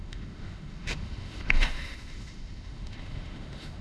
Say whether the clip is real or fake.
fake